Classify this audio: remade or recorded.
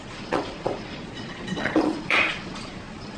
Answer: remade